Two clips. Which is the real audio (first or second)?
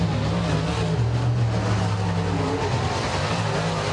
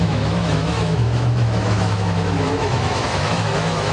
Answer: first